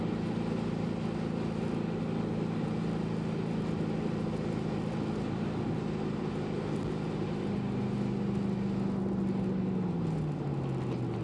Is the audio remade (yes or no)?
no